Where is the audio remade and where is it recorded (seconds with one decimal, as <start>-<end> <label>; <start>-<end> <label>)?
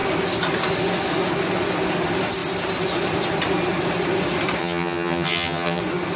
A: 0.0-4.6 recorded; 4.6-5.8 remade; 5.8-6.2 recorded